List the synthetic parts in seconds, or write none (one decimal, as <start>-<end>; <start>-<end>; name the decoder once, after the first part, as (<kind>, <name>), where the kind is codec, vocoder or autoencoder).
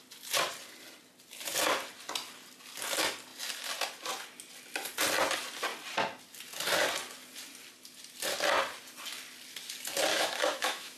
10.1-11.0 (autoencoder, DAC-VAE)